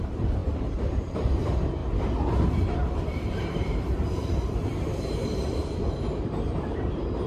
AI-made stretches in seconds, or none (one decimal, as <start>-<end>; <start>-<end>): 0.0-1.8; 2.5-7.3